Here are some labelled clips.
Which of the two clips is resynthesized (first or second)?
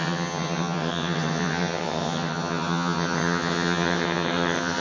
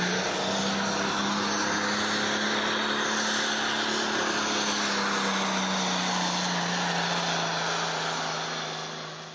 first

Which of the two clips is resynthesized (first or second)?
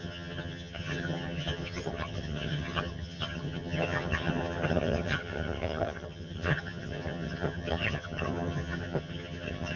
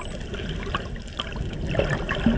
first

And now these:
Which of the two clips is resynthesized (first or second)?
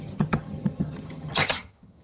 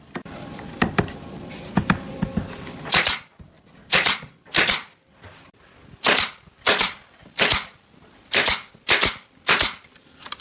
first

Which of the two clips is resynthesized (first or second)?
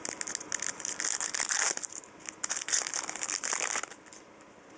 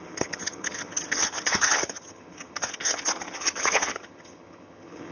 second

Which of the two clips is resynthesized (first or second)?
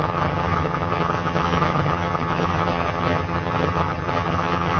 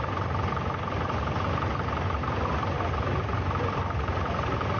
first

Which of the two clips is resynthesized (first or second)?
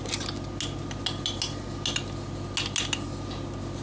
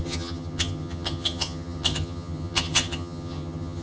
second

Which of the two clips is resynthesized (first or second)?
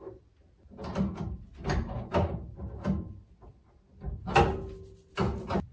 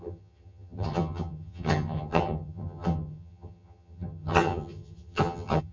second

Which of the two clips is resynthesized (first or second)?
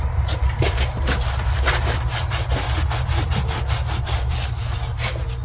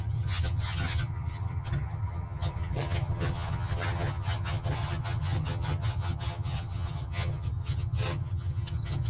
second